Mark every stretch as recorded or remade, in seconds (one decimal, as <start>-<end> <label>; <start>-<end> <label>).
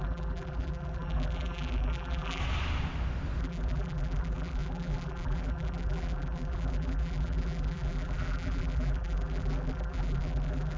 0.0-2.4 remade; 2.4-3.4 recorded; 3.4-10.8 remade